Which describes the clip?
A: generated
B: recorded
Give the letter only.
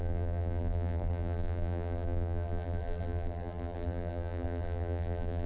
A